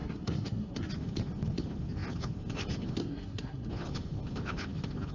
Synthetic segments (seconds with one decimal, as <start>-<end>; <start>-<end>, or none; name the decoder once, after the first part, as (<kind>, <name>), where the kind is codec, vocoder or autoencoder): 0.0-0.9 (codec, SNAC); 3.0-3.7